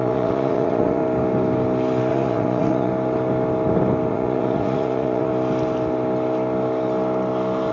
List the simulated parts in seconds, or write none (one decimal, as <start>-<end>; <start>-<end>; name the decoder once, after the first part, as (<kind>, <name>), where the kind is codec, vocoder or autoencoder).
0.0-1.0 (vocoder, Vocos); 2.1-2.9; 4.1-5.3